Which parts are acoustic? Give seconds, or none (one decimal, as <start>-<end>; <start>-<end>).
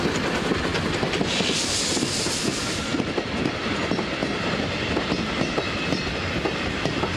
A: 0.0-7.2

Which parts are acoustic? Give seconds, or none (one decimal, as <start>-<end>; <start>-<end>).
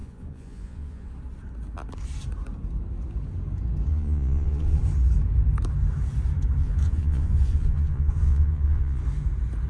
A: 1.1-3.9; 4.8-6.6; 9.0-9.7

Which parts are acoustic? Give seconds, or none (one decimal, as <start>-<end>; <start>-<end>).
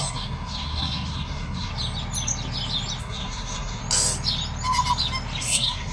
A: 1.7-3.0; 3.8-5.4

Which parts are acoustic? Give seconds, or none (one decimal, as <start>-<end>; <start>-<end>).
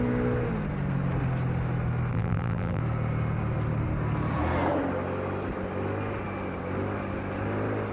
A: 0.0-2.1; 2.8-7.9